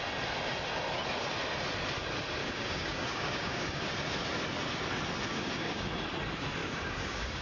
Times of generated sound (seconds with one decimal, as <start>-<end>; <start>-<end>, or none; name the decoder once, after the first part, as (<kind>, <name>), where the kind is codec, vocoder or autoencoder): 2.4-3.9 (codec, DAC); 5.3-5.9; 6.6-7.4